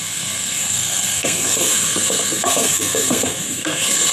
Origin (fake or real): fake